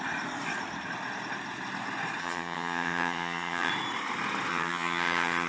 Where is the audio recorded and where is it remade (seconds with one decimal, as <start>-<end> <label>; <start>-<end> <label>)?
0.0-2.2 recorded; 2.2-3.7 remade; 3.7-4.5 recorded; 4.5-5.5 remade